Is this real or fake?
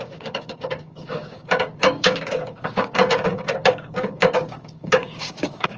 fake